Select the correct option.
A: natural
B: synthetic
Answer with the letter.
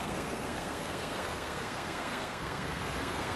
B